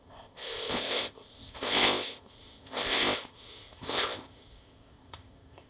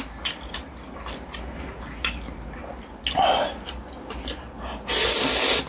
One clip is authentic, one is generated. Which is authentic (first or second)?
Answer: second